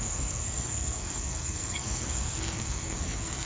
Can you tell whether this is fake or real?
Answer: fake